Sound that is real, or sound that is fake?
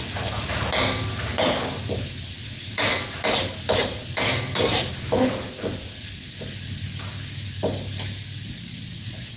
real